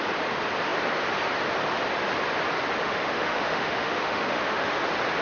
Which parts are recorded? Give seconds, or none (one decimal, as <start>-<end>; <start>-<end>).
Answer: 0.0-2.8; 4.8-5.2